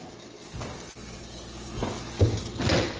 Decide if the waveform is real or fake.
real